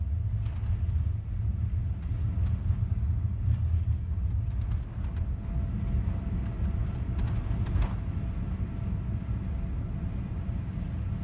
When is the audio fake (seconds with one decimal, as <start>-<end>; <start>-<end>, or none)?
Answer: none